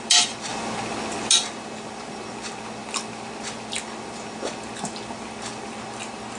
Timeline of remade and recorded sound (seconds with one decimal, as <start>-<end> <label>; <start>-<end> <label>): 0.0-6.4 recorded